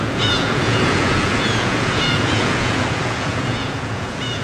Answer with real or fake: fake